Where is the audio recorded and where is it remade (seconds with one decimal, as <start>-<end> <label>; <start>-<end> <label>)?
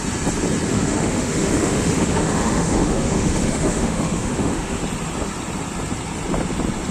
0.0-0.7 recorded; 0.7-4.8 remade; 4.8-6.9 recorded